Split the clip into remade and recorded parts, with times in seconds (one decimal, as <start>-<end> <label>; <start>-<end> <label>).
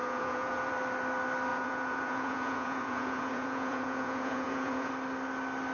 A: 0.0-0.7 remade; 0.7-1.5 recorded; 1.5-4.9 remade; 4.9-5.7 recorded